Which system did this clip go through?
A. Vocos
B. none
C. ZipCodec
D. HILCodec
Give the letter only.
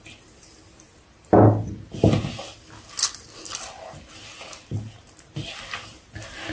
B